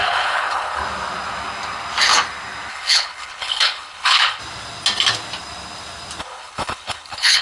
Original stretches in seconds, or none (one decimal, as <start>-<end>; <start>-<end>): 0.8-2.7; 4.4-6.2